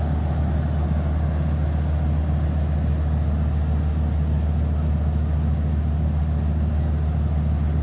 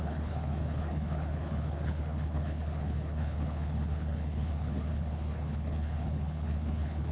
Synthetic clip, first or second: second